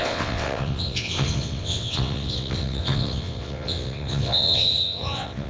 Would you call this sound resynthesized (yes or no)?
yes